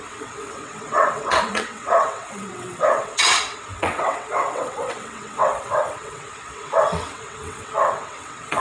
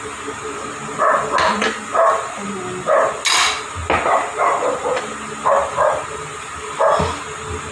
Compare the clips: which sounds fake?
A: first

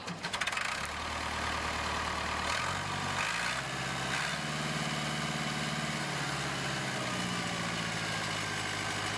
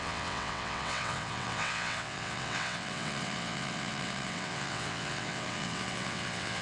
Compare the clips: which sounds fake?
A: second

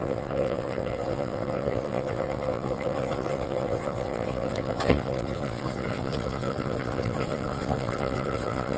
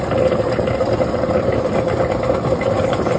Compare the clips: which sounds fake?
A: first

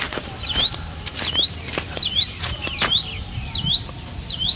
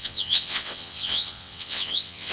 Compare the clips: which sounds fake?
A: second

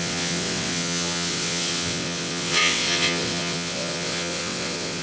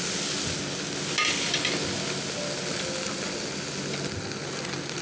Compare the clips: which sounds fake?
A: first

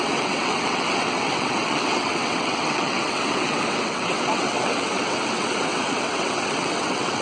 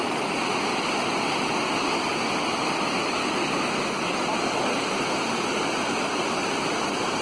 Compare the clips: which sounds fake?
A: first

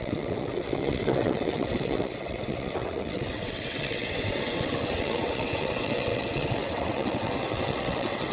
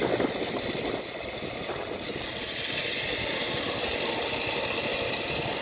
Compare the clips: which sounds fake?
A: first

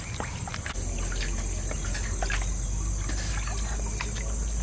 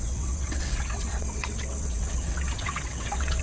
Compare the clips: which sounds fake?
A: second